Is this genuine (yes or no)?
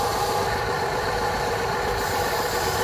no